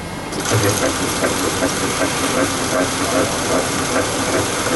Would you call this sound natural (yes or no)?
no